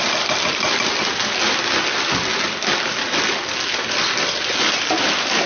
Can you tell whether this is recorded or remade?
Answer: recorded